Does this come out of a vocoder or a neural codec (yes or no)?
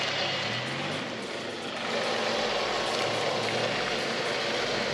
no